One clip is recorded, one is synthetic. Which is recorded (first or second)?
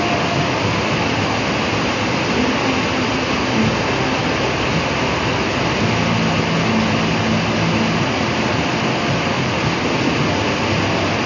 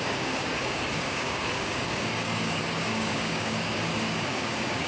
first